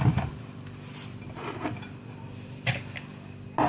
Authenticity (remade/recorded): recorded